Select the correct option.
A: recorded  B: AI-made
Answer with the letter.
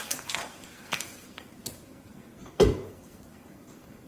B